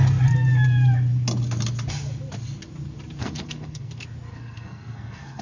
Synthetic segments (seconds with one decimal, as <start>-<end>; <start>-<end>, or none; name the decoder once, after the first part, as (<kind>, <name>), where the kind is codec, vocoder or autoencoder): 3.2-3.9 (codec, SNAC); 4.3-5.4